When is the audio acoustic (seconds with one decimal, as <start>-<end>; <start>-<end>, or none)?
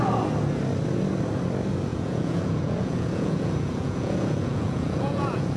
0.0-1.9